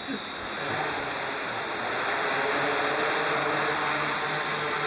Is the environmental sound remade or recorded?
recorded